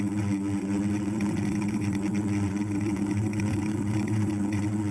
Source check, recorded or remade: remade